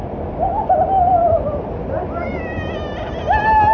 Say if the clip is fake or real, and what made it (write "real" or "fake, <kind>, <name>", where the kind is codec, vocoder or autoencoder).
real